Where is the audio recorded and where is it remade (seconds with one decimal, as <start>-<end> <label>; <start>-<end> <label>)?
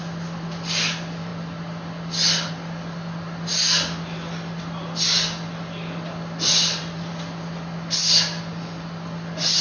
0.0-9.6 recorded